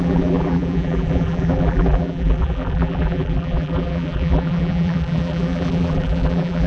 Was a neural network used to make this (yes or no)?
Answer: yes